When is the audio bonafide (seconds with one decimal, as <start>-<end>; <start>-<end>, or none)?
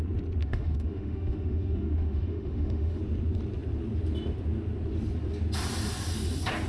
0.0-0.4; 3.0-6.7